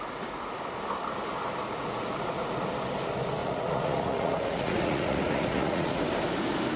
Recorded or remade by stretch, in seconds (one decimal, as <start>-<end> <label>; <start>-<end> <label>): 0.0-1.6 recorded; 1.6-2.7 remade; 2.7-3.4 recorded; 3.4-6.0 remade; 6.0-6.8 recorded